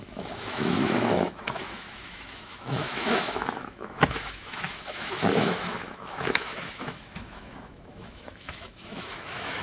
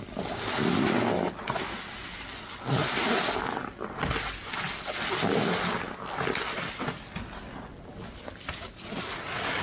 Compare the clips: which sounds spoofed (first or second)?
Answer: first